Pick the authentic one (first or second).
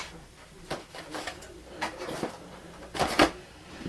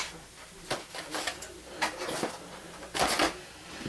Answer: second